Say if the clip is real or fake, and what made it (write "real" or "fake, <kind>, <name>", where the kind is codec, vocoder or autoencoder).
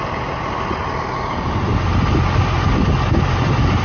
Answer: real